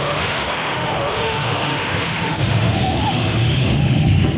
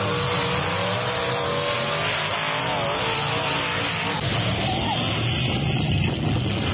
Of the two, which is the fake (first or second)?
first